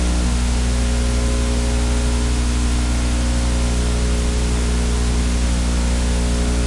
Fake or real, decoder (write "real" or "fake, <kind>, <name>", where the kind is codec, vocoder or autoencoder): real